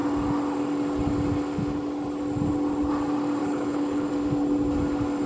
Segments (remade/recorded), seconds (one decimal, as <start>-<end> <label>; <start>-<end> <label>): 0.0-3.4 recorded; 3.4-4.1 remade; 4.1-5.3 recorded